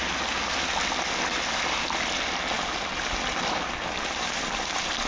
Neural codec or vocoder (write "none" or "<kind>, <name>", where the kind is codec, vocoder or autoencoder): none